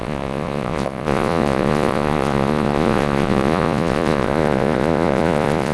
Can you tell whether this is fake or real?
fake